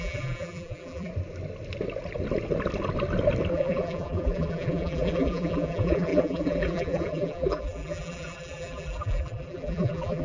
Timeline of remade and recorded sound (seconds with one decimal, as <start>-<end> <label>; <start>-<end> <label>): 0.0-1.1 remade; 1.1-3.5 recorded; 3.5-10.2 remade